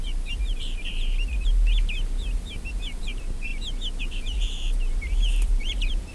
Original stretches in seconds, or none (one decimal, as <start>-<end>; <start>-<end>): 1.5-3.0; 3.5-4.0